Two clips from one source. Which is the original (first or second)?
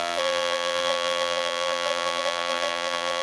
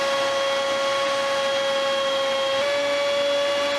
second